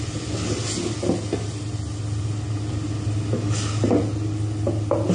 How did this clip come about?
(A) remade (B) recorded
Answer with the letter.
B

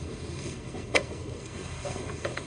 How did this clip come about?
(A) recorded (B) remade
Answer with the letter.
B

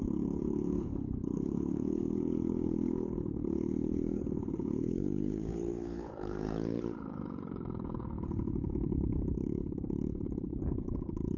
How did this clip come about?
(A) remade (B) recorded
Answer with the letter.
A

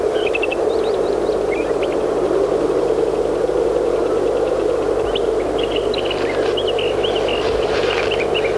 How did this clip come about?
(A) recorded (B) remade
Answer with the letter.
A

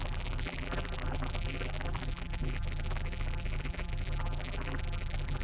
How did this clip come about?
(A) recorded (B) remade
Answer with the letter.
B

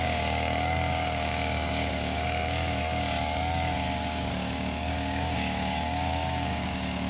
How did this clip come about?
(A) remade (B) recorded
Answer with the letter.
A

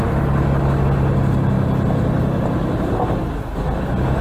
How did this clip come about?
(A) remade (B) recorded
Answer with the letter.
B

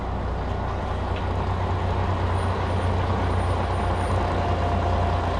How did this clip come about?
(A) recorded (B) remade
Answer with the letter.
A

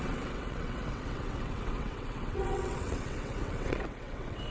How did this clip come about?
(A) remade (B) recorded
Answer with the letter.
A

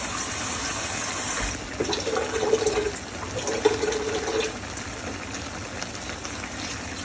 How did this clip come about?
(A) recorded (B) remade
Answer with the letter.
A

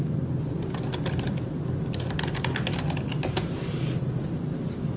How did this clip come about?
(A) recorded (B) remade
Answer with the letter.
A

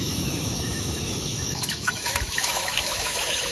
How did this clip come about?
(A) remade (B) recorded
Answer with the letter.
A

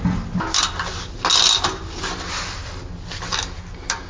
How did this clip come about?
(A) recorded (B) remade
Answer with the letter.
A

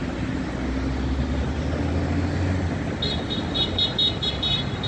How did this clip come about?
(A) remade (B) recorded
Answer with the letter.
B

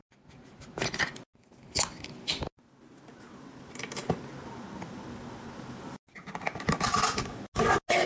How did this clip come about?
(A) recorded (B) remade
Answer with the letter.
A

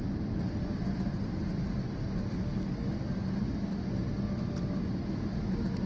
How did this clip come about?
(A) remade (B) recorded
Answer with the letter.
B